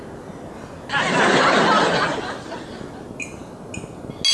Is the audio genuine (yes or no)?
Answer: yes